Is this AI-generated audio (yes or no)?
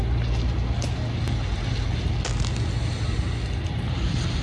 no